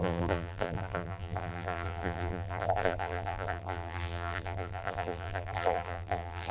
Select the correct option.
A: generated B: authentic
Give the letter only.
A